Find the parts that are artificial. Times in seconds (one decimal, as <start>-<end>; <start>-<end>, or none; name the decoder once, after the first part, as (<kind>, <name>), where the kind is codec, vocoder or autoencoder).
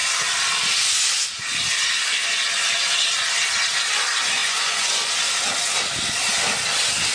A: 4.4-5.1 (vocoder, Vocos)